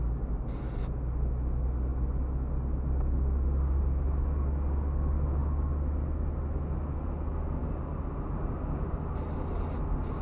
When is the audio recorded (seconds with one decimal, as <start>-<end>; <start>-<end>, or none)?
0.0-10.2